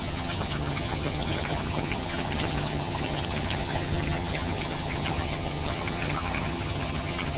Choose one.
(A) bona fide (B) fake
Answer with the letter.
B